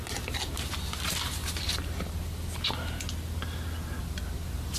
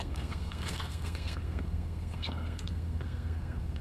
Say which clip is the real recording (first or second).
first